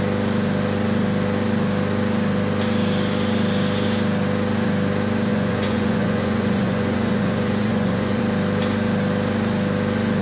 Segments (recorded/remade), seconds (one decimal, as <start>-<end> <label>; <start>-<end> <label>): 0.0-5.3 recorded; 5.3-8.2 remade; 8.2-10.2 recorded